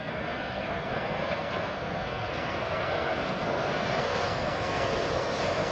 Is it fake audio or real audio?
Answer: fake